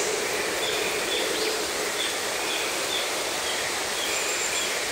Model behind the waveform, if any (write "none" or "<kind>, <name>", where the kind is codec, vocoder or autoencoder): vocoder, BigVGAN v2